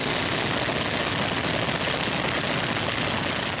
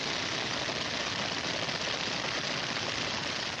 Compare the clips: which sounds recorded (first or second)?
first